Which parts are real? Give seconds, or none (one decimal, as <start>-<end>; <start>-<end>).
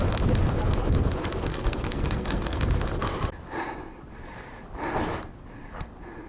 0.0-1.5; 2.6-6.3